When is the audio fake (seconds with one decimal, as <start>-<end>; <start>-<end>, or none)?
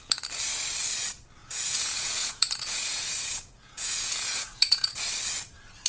1.4-4.9